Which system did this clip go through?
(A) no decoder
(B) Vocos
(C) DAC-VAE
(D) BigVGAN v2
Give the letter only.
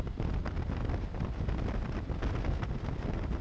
A